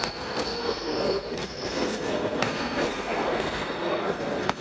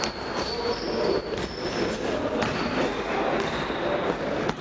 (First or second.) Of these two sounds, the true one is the second